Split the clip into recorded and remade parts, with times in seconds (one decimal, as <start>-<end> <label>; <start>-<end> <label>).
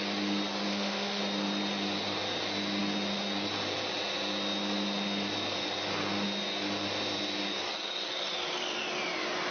0.0-0.7 recorded; 0.7-1.2 remade; 1.2-9.5 recorded